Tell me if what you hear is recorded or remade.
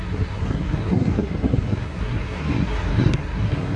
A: remade